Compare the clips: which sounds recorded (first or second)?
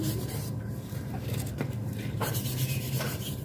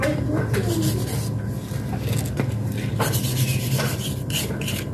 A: second